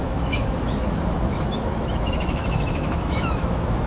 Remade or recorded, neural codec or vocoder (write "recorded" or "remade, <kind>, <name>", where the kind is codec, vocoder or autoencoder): remade, autoencoder, DAC-VAE